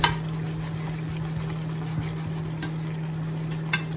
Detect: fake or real real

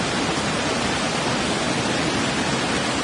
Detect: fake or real real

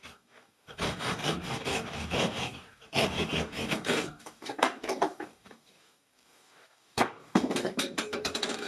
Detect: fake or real fake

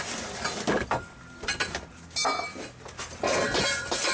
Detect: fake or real real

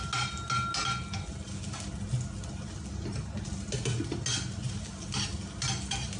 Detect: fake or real real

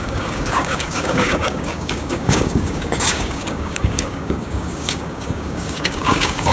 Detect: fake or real fake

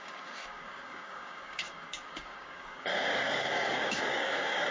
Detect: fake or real fake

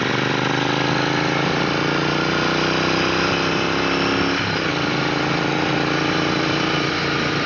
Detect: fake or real real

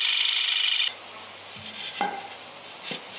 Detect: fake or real real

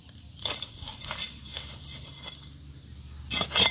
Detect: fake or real real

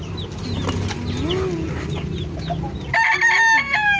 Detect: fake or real real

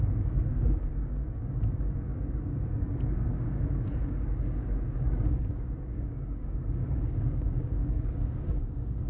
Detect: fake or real fake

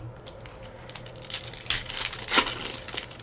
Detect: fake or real real